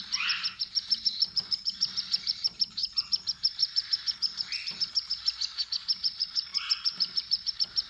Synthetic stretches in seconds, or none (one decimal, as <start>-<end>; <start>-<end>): none